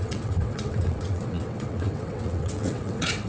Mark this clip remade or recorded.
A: remade